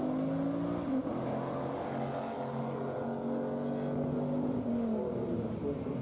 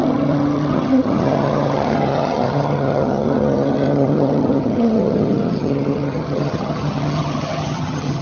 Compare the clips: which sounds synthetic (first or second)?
second